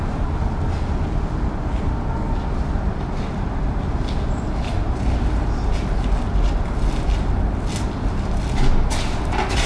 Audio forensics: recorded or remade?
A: recorded